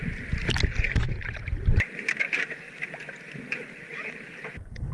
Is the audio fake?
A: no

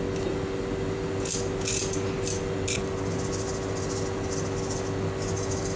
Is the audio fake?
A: no